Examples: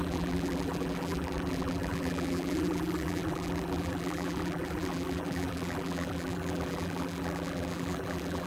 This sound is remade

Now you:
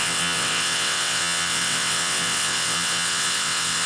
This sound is remade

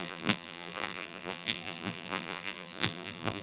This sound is remade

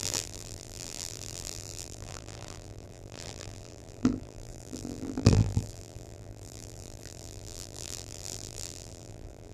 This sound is remade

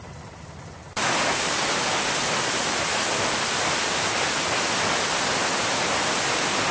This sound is recorded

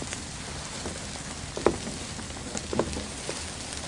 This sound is recorded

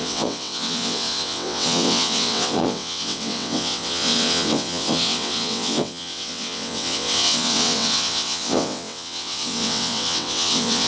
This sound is remade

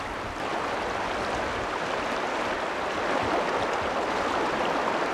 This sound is recorded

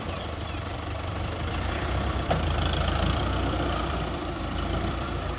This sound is remade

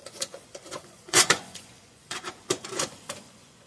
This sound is remade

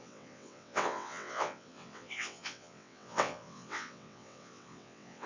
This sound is remade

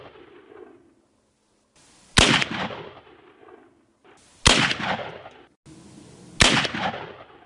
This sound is recorded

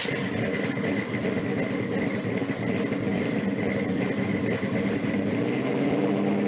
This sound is recorded